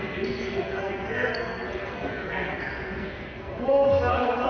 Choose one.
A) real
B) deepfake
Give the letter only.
B